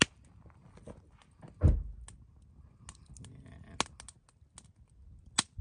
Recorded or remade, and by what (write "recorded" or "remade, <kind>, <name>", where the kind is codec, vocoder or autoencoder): recorded